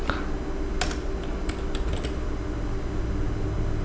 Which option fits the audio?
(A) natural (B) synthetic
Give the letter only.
A